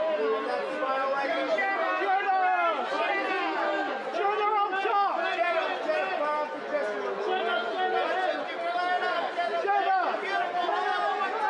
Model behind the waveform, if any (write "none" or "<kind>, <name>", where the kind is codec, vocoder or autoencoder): none